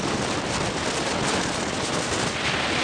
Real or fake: real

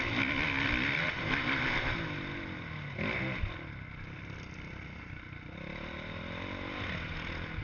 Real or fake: real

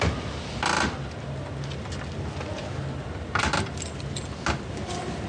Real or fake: real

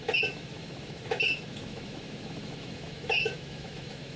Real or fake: fake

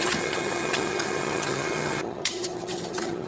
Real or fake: fake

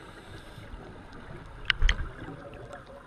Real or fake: real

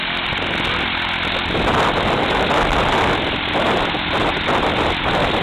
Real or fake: real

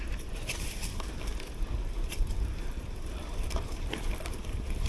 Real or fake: fake